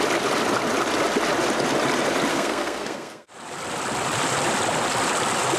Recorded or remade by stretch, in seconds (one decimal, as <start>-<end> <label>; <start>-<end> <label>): 0.0-2.3 recorded; 2.3-3.3 remade; 3.3-5.6 recorded